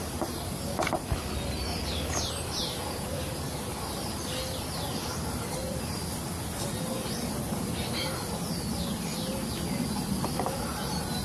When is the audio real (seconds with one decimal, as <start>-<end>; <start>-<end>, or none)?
0.0-1.7; 2.3-5.0; 5.6-11.2

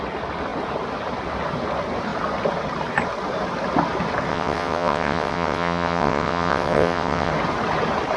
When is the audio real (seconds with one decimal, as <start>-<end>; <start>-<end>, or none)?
0.0-4.3; 7.3-8.2

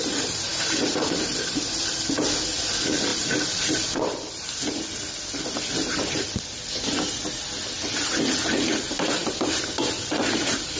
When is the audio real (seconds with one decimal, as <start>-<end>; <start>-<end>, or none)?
0.0-3.1; 5.2-9.2

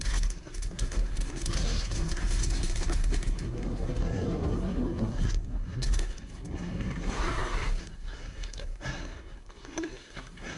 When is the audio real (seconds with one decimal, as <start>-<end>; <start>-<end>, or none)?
none

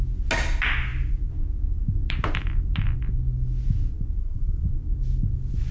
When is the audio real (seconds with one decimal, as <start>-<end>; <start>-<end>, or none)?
0.0-4.2; 4.7-5.7

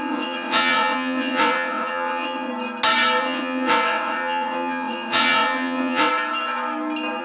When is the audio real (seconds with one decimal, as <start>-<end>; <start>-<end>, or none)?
2.5-3.2; 6.1-7.2

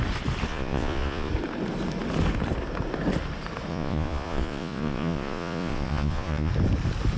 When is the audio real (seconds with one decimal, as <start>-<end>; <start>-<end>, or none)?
0.0-0.5; 1.3-3.7; 6.5-7.2